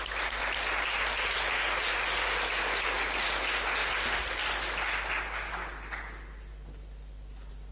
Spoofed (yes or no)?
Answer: no